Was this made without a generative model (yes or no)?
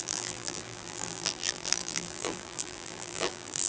no